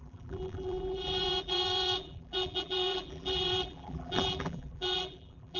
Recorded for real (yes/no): no